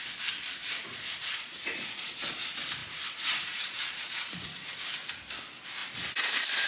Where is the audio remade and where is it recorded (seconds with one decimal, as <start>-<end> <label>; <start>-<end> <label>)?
0.0-0.6 recorded; 0.6-2.1 remade; 2.1-2.8 recorded; 2.8-4.9 remade; 4.9-6.7 recorded